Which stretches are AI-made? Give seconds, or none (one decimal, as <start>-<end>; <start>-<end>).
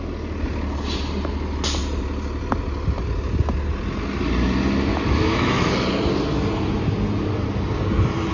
4.9-5.7